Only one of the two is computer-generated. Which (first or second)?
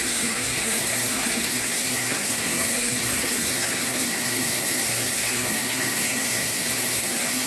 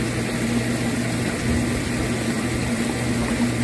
first